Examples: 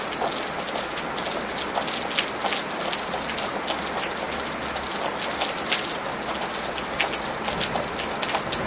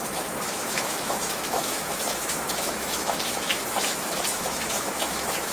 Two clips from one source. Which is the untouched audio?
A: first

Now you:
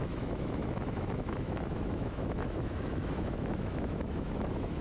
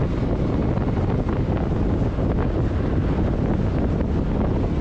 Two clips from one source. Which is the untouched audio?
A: second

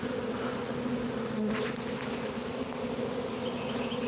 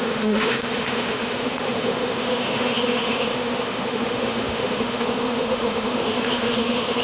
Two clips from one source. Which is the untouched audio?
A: first